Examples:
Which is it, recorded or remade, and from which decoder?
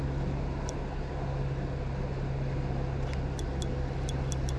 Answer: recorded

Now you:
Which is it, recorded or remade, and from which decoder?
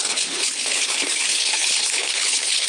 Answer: remade, codec, HILCodec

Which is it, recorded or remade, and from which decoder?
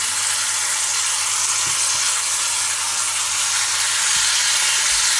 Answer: recorded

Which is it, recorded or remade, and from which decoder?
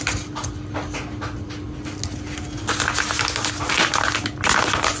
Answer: recorded